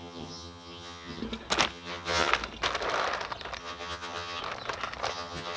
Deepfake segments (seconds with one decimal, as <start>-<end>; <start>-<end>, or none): 0.0-1.2; 1.7-2.3; 3.6-4.4; 5.1-5.6